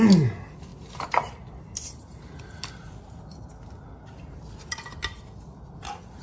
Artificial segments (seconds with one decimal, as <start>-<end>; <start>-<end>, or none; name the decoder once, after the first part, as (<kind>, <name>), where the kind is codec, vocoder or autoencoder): none